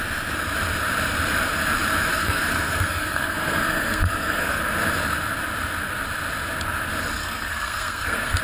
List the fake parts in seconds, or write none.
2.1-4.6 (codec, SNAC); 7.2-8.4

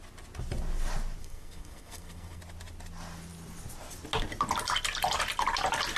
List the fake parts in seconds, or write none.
1.2-2.4 (codec, SNAC)

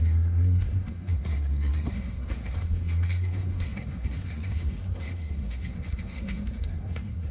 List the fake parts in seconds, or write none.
0.0-7.3 (codec, SNAC)

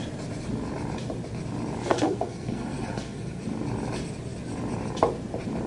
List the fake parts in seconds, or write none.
1.9-3.4 (codec, SNAC)

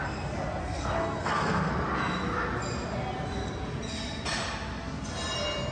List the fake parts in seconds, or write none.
0.6-1.7 (codec, SNAC)